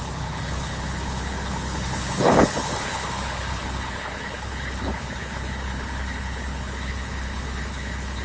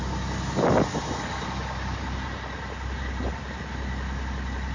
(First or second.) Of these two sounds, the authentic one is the second